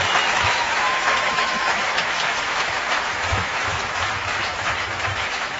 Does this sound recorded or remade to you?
remade